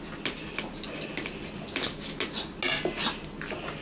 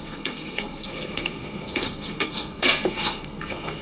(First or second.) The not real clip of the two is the second